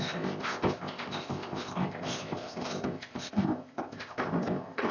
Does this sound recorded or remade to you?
remade